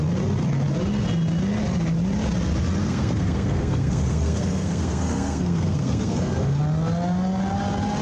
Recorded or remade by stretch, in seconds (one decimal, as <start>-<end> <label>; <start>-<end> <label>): 0.0-2.8 recorded; 2.8-6.6 remade; 6.6-8.0 recorded